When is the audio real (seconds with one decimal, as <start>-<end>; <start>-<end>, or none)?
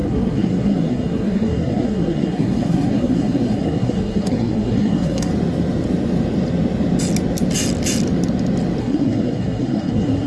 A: 5.3-8.8